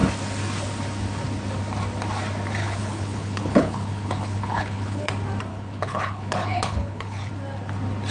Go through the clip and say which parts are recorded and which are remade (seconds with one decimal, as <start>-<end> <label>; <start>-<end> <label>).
0.0-2.6 recorded; 2.6-5.1 remade; 5.1-5.5 recorded; 5.5-7.3 remade; 7.3-8.1 recorded